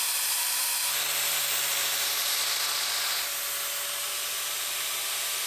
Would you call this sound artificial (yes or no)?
no